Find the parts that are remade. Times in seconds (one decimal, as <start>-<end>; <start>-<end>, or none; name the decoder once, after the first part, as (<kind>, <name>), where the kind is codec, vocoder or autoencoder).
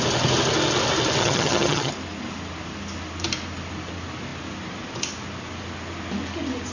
1.2-1.9 (vocoder, HiFi-GAN)